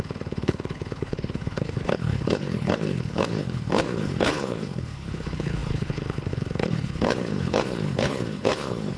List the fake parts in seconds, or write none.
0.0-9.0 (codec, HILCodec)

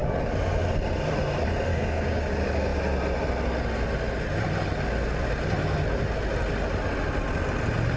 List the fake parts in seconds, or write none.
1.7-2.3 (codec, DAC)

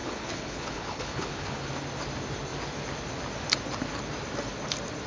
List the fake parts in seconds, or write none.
0.0-1.7 (codec, HILCodec)

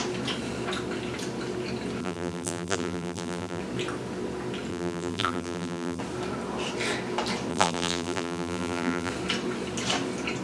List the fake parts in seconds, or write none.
2.0-3.6 (vocoder, BigVGAN v2); 4.7-6.0; 7.5-9.1

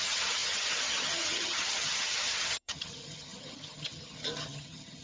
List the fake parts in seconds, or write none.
0.0-5.0 (vocoder, HiFi-GAN)